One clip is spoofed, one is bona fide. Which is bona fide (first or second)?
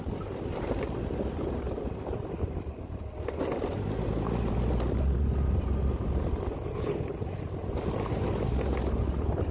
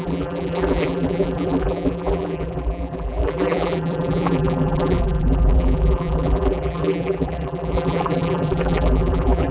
first